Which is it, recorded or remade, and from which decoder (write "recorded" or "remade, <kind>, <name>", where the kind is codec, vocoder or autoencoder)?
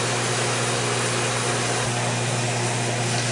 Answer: recorded